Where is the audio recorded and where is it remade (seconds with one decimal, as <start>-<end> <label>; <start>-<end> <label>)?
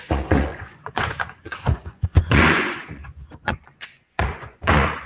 0.0-5.1 remade